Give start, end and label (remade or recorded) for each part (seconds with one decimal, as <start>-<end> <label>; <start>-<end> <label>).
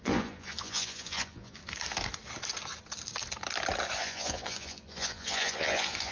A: 0.0-1.6 remade; 1.6-4.0 recorded; 4.0-6.1 remade